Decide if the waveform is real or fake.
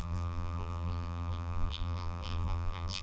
fake